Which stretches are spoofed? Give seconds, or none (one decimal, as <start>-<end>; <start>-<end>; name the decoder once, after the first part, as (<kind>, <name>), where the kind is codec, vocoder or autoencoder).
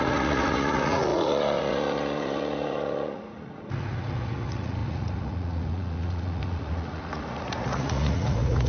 0.0-8.7 (vocoder, Vocos)